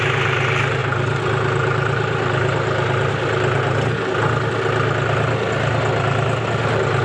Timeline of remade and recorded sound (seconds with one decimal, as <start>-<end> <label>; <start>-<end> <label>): 0.0-7.0 recorded